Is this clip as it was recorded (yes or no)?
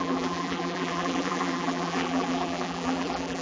no